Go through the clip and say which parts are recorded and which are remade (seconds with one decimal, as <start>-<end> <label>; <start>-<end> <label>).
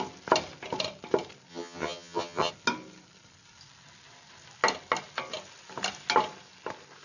0.0-1.5 recorded; 1.5-2.5 remade; 2.5-7.0 recorded